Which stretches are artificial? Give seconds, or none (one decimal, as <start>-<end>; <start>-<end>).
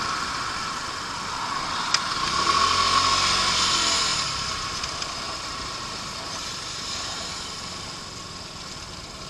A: 4.1-7.3